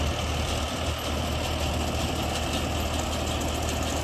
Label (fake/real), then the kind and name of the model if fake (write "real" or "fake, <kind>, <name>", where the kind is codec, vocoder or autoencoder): real